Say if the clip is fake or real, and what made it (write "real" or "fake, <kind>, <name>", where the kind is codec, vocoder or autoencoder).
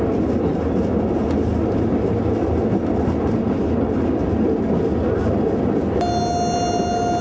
real